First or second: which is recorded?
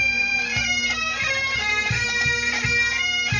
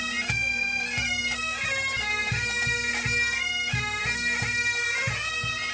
second